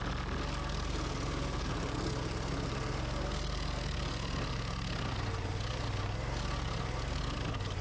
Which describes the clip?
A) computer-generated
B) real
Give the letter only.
B